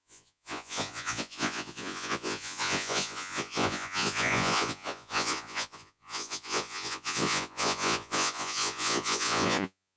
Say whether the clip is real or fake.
fake